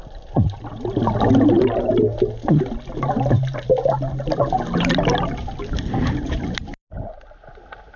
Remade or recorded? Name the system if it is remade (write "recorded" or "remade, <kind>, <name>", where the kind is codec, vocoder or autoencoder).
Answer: recorded